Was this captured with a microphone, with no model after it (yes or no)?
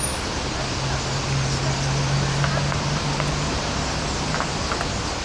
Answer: yes